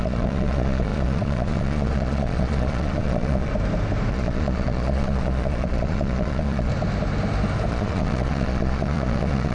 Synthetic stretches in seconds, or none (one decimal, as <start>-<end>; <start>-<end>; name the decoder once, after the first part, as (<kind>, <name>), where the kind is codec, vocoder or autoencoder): 0.0-3.5 (vocoder, Vocos); 4.1-6.7; 7.7-9.5